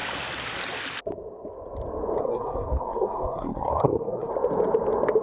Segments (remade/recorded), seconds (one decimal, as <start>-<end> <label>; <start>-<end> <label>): 0.0-2.2 recorded; 2.2-4.3 remade; 4.3-5.2 recorded